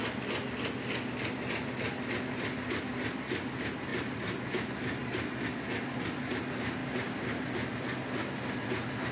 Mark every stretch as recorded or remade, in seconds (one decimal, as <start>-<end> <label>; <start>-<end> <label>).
0.0-9.1 recorded